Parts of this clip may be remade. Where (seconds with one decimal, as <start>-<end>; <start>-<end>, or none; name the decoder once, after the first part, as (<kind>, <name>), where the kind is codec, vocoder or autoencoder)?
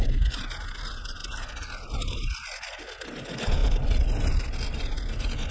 none